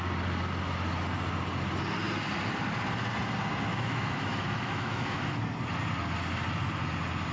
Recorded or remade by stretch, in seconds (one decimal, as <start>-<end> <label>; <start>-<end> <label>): 0.0-3.7 recorded; 3.7-5.4 remade; 5.4-7.3 recorded